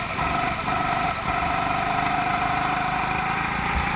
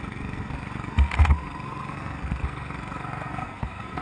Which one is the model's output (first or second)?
second